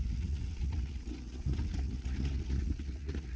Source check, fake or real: fake